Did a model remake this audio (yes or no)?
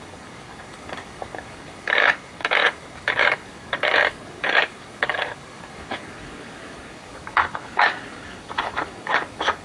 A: yes